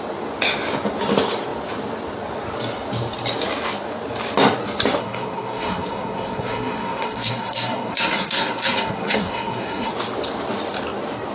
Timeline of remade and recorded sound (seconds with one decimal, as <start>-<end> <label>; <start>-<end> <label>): 0.0-5.0 recorded; 5.0-9.9 remade; 9.9-11.3 recorded